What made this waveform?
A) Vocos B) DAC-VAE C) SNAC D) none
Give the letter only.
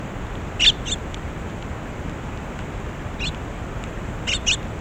D